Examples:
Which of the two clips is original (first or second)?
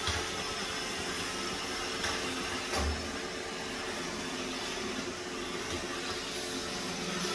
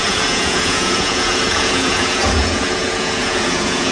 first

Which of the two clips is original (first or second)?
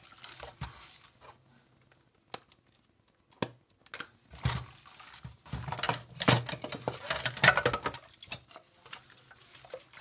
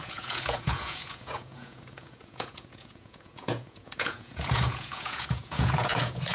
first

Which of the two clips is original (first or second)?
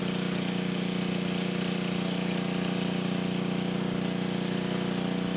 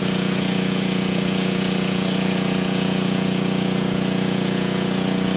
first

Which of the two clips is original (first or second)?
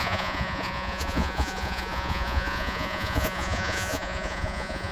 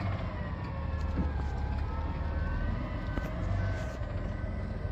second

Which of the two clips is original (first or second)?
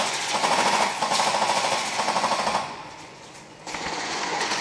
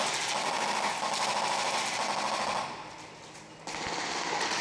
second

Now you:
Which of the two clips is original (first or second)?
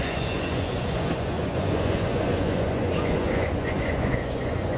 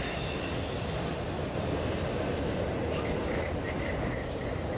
second